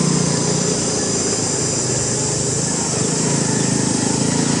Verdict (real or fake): real